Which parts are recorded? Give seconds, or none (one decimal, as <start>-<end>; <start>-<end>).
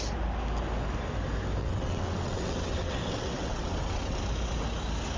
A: 0.0-1.6; 4.2-5.2